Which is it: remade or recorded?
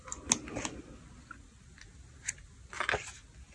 recorded